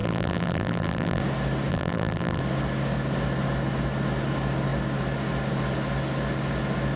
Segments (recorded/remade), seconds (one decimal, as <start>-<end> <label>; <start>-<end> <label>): 0.0-1.2 remade; 1.2-1.7 recorded; 1.7-2.4 remade; 2.4-7.0 recorded